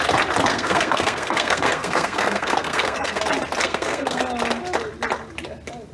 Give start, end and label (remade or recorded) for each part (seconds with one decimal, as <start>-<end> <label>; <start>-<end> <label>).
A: 0.0-0.5 recorded; 0.5-3.2 remade; 3.2-3.6 recorded; 3.6-4.2 remade; 4.2-5.9 recorded